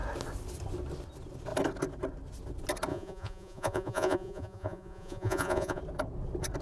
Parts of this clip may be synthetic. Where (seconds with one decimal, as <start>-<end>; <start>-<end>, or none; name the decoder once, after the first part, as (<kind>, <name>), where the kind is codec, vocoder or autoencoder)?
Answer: 2.9-5.8 (vocoder, Vocos)